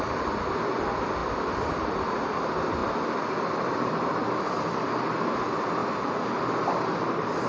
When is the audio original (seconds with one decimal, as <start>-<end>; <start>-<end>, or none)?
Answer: 0.0-2.8; 4.9-7.5